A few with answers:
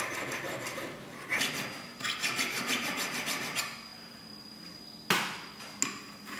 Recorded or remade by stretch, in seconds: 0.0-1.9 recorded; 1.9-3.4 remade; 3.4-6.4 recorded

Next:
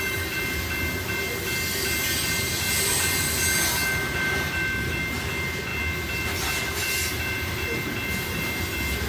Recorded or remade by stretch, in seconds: 0.0-9.1 recorded